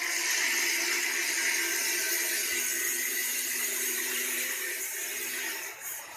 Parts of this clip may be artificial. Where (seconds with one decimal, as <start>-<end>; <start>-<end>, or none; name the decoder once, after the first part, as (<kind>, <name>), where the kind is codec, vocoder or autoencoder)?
3.2-6.2 (vocoder, BigVGAN v2)